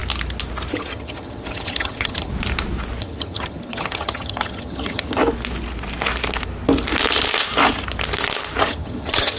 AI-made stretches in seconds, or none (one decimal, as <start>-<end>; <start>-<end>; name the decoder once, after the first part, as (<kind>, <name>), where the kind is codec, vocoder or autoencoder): 0.7-2.3 (vocoder, HiFi-GAN); 3.0-5.2; 8.6-9.4